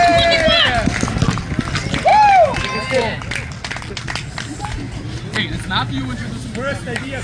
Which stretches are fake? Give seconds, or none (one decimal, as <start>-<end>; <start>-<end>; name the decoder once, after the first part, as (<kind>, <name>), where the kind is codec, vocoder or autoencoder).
none